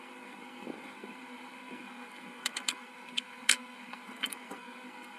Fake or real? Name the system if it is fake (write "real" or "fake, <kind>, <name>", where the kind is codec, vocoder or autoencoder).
fake, codec, SNAC